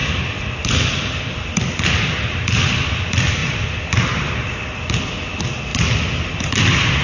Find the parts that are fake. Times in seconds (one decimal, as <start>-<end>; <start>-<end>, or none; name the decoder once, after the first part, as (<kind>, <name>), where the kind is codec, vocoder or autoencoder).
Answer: 0.0-0.6 (vocoder, BigVGAN v2); 3.4-4.4